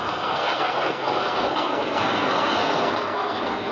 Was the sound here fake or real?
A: fake